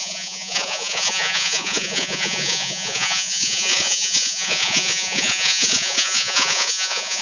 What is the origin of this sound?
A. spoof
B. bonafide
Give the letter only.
A